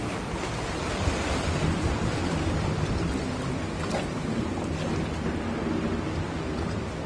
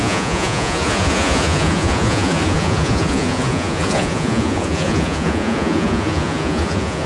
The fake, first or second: second